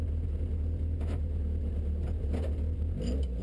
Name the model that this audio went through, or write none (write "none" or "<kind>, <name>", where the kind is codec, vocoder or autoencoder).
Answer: none